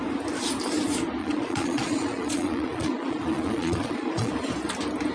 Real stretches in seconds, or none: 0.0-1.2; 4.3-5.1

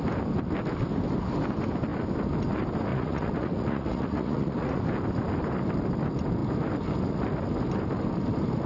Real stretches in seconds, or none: 0.0-2.9; 4.8-8.7